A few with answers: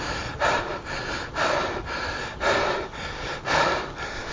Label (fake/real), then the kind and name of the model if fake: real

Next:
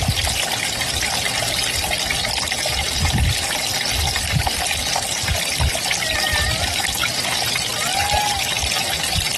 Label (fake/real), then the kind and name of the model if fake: real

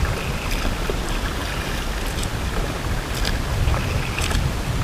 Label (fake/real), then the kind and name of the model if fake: real